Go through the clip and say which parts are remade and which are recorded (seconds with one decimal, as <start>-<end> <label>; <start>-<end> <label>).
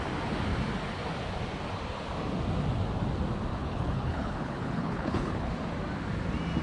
0.0-3.5 recorded; 3.5-5.5 remade; 5.5-6.6 recorded